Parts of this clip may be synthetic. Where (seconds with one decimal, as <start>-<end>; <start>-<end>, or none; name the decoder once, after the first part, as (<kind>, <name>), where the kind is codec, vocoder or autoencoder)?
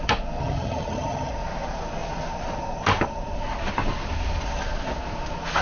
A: 0.4-1.3 (vocoder, HiFi-GAN)